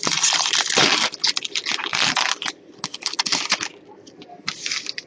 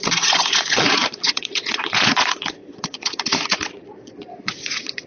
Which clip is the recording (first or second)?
first